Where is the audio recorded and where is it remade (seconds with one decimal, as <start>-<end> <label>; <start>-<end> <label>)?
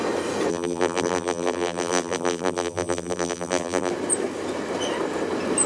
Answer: 0.0-0.5 recorded; 0.5-3.9 remade; 3.9-5.7 recorded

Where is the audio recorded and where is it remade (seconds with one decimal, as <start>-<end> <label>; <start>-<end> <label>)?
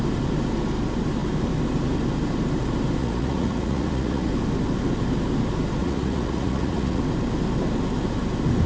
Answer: 0.0-3.0 recorded; 3.0-4.3 remade; 4.3-5.8 recorded; 5.8-7.0 remade; 7.0-8.7 recorded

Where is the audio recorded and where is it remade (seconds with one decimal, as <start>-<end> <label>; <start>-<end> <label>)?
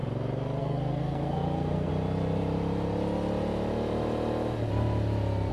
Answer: 0.0-0.6 recorded; 0.6-1.9 remade; 1.9-5.5 recorded